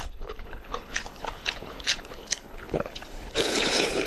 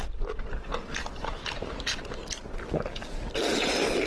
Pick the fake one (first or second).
first